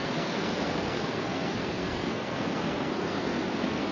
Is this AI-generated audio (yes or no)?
yes